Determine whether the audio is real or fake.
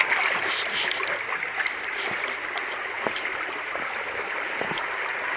real